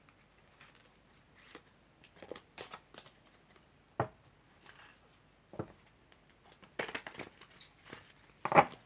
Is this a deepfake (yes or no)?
no